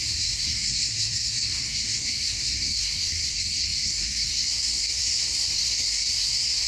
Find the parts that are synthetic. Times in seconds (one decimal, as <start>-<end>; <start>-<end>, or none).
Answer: 0.0-6.7